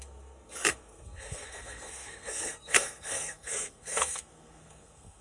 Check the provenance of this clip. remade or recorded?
remade